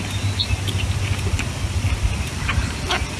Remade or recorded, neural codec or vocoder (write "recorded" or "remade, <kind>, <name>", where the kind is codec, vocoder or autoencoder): recorded